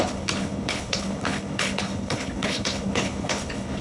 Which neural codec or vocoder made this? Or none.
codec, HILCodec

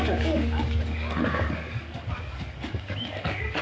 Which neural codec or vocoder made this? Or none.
codec, DAC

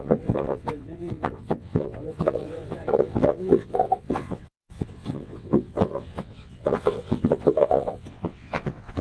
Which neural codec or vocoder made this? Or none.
vocoder, WaveNeXt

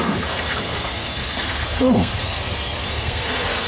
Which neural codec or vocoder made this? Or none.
codec, SNAC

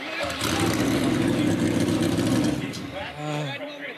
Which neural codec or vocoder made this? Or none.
vocoder, BigVGAN v2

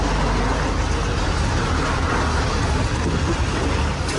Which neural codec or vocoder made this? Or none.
none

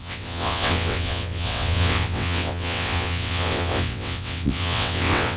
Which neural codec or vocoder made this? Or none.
vocoder, WaveNeXt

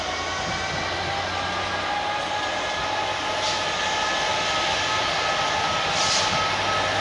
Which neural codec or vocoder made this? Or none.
none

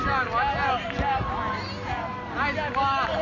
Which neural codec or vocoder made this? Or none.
none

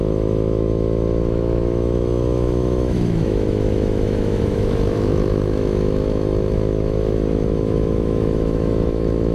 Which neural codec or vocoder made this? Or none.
autoencoder, DAC-VAE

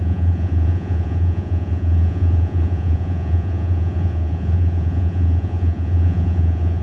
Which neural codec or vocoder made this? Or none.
vocoder, Vocos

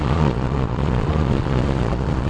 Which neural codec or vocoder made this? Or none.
vocoder, Vocos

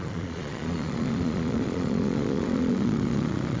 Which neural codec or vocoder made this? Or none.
vocoder, Vocos